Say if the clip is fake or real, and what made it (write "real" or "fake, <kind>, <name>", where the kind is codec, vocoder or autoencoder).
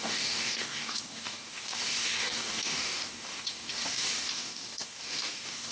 fake, codec, DAC